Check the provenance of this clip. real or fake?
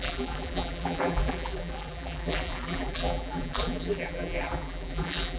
fake